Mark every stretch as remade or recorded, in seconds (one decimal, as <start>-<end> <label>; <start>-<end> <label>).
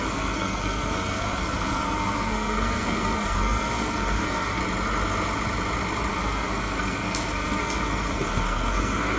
0.0-4.6 remade; 4.6-6.1 recorded; 6.1-9.2 remade